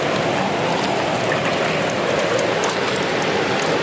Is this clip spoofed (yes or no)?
no